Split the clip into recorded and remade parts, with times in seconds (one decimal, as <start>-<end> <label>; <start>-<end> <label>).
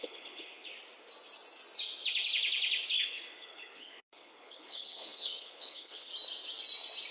0.0-0.7 remade; 0.7-3.0 recorded; 3.0-6.1 remade; 6.1-7.1 recorded